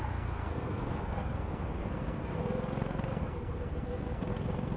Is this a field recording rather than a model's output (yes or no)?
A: no